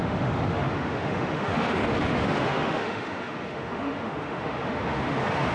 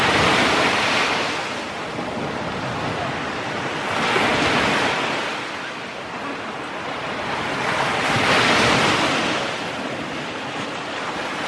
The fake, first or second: first